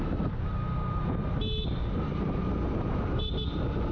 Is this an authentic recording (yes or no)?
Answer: yes